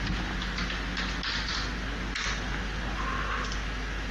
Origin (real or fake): real